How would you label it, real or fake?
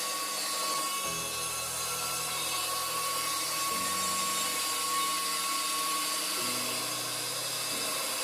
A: real